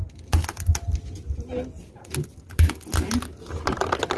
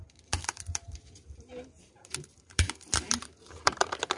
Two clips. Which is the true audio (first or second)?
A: first